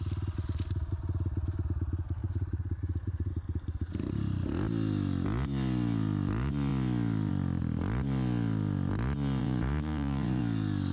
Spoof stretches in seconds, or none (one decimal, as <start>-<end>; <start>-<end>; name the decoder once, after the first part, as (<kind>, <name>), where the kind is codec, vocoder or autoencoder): 2.2-3.3 (vocoder, Vocos); 9.4-10.4

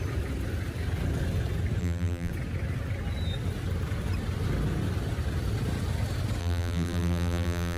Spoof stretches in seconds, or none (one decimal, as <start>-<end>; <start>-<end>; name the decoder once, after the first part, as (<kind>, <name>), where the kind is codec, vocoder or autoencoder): 1.8-2.3 (vocoder, BigVGAN v2); 6.4-7.8

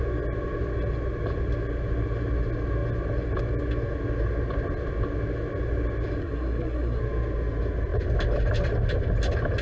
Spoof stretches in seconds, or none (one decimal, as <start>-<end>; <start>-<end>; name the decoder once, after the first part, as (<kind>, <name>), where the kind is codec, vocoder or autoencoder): 6.2-7.0 (codec, SNAC)

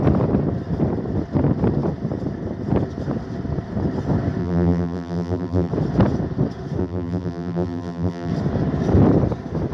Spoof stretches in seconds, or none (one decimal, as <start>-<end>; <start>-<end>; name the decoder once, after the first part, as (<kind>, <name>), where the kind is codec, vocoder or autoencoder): 4.4-5.7 (vocoder, BigVGAN v2); 6.8-8.3